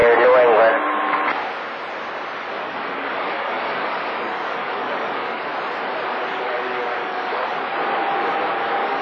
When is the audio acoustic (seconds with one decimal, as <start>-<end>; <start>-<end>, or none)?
0.0-2.6; 5.5-6.4; 7.7-8.5